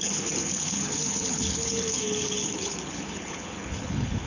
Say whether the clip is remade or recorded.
remade